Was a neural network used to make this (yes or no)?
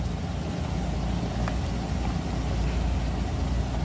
no